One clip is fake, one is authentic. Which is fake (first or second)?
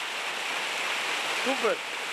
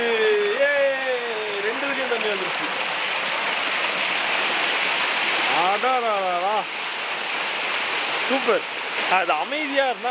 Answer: first